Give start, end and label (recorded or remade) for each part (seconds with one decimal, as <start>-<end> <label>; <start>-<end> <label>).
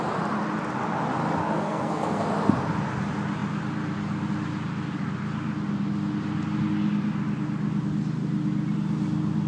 0.0-1.4 recorded; 1.4-2.3 remade; 2.3-9.5 recorded